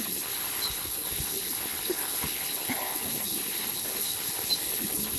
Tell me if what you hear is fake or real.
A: fake